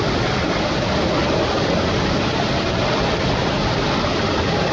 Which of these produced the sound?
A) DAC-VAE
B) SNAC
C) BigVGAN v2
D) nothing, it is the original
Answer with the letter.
D